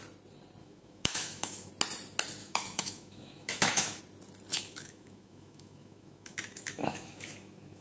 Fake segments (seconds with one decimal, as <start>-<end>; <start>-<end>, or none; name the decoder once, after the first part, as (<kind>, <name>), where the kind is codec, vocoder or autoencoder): 0.6-1.7 (autoencoder, DAC-VAE); 2.4-4.0; 4.5-7.8